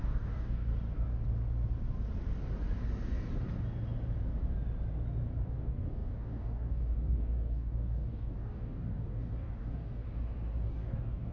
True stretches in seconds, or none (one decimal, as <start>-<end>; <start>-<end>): 0.7-5.5; 10.0-10.6